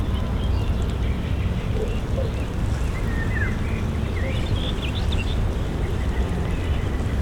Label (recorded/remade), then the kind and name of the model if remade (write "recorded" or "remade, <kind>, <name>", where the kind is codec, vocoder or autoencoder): recorded